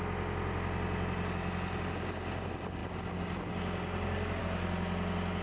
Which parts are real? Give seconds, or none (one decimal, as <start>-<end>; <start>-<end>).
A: 0.0-5.4